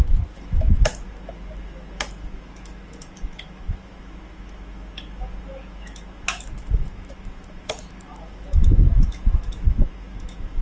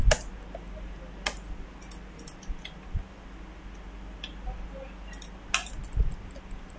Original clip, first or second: second